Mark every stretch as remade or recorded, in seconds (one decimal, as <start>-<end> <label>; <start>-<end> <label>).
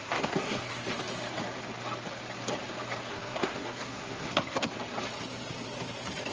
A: 0.0-0.8 remade; 0.8-3.1 recorded; 3.1-4.7 remade; 4.7-6.3 recorded